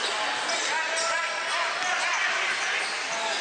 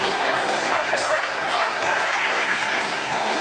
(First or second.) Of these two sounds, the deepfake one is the second